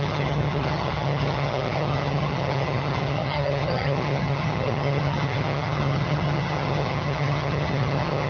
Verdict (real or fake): fake